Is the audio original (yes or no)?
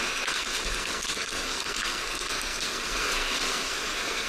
no